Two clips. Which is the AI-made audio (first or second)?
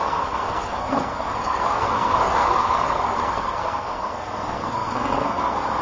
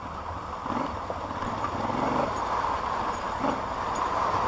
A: first